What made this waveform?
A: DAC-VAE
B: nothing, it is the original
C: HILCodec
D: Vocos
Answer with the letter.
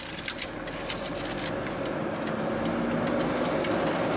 B